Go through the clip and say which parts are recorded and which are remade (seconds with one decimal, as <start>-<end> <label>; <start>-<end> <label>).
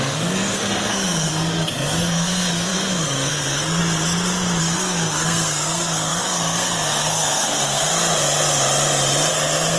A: 0.0-3.8 remade; 3.8-4.6 recorded; 4.6-7.9 remade; 7.9-9.3 recorded; 9.3-9.8 remade